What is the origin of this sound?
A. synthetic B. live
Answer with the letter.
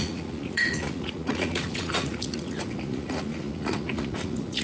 A